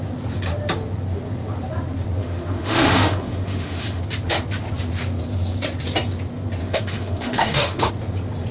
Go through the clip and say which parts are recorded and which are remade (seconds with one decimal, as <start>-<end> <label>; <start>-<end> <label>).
0.0-2.2 recorded; 2.2-4.0 remade; 4.0-6.6 recorded; 6.6-7.9 remade; 7.9-8.5 recorded